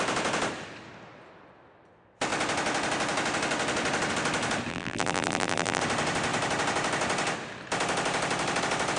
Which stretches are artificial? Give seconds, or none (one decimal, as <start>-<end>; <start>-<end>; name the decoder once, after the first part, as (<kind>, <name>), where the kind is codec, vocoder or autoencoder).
4.7-5.8 (vocoder, BigVGAN v2)